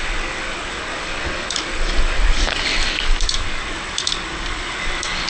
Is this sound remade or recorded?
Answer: remade